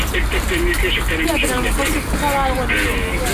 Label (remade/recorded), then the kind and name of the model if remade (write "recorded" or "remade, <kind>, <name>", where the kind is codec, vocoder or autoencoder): recorded